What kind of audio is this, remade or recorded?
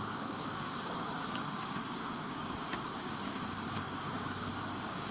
remade